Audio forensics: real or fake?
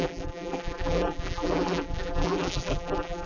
fake